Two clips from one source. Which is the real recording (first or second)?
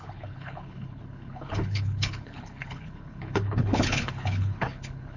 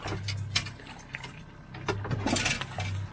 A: second